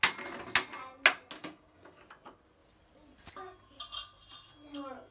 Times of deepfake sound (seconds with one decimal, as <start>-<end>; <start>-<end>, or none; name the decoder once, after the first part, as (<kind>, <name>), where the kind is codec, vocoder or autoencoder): 1.4-2.0 (codec, DAC)